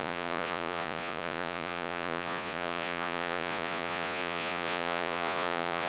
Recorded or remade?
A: remade